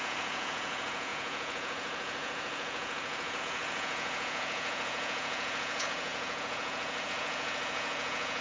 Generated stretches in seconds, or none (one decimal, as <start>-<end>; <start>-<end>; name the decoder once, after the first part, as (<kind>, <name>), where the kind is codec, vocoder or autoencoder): 0.0-8.4 (vocoder, Vocos)